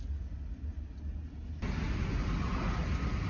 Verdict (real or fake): real